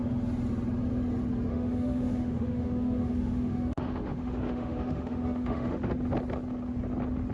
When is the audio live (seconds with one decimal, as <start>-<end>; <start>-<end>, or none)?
0.0-1.5; 5.9-7.3